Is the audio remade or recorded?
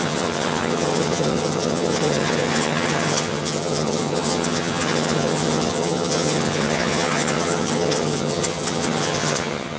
remade